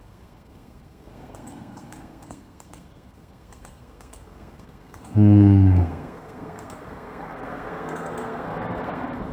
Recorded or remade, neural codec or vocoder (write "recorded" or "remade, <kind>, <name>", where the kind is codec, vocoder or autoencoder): remade, codec, SNAC